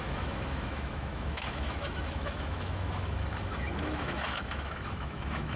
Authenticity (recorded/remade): remade